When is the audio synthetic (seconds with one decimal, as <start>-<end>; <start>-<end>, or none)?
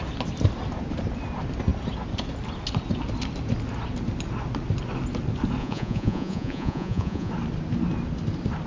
5.6-7.3